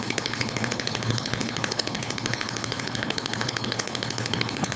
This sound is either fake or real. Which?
fake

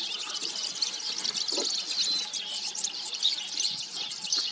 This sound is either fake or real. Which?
real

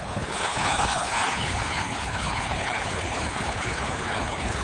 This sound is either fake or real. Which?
fake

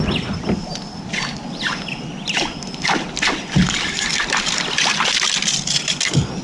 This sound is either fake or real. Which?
real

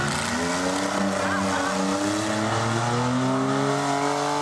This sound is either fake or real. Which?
real